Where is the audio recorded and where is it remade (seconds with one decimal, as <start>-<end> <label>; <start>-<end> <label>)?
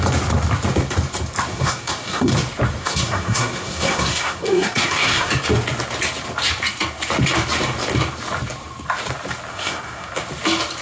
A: 0.0-1.5 recorded; 1.5-2.3 remade; 2.3-2.8 recorded; 2.8-5.3 remade; 5.3-9.5 recorded; 9.5-10.1 remade; 10.1-10.8 recorded